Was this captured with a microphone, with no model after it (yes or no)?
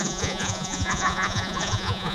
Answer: no